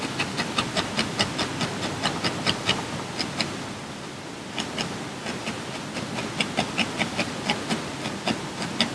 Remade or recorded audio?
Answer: recorded